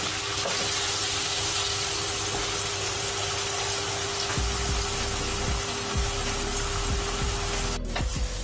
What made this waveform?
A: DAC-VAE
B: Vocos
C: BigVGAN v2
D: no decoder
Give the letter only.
D